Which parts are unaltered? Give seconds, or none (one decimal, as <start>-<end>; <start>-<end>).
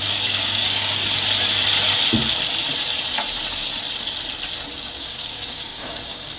1.0-4.7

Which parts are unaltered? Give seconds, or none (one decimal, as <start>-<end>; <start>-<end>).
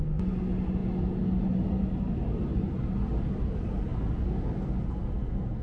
0.0-5.6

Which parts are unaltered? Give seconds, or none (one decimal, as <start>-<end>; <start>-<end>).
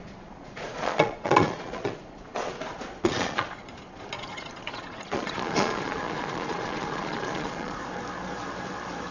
7.8-9.1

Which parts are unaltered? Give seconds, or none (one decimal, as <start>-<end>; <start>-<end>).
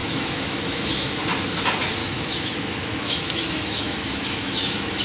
1.1-2.0